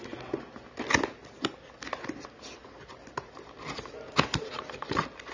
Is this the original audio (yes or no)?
yes